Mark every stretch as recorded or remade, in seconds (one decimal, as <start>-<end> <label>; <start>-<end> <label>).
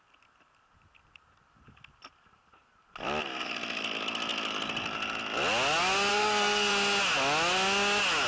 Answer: 0.0-6.1 recorded; 6.1-6.7 remade; 6.7-8.3 recorded